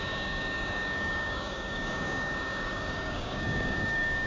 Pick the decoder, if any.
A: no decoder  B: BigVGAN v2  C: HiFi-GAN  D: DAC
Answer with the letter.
D